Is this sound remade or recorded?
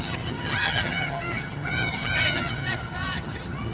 remade